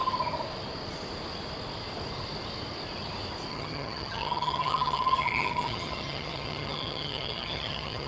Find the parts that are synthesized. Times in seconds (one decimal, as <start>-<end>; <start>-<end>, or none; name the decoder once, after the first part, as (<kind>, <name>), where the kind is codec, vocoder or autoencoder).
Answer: 3.5-8.1 (vocoder, HiFi-GAN)